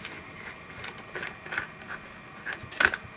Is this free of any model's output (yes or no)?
yes